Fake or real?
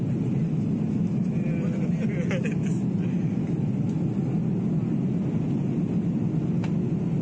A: real